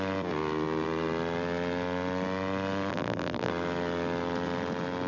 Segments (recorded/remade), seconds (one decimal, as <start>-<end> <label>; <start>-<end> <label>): 0.0-2.9 recorded; 2.9-3.5 remade; 3.5-5.1 recorded